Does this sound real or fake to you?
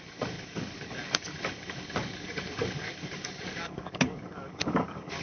fake